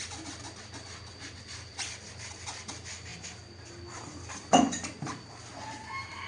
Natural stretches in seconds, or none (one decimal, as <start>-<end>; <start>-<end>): 0.0-6.3